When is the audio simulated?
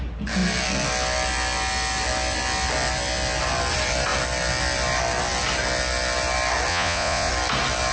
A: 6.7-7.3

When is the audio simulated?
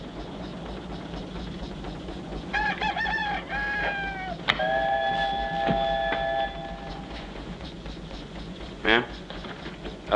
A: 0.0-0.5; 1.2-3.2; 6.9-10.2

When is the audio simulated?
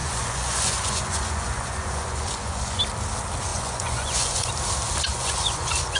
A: 0.0-2.8; 3.5-4.5; 5.1-6.0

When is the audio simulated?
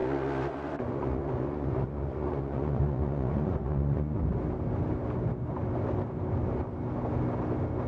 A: 0.0-4.2